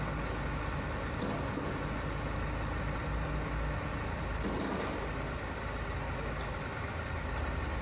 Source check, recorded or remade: recorded